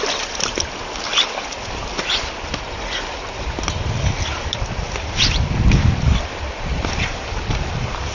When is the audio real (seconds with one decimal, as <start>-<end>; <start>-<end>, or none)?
0.0-8.1